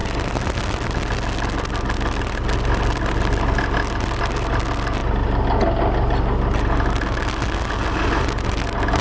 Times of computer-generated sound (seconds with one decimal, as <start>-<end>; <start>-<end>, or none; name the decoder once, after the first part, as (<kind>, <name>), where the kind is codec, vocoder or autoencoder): none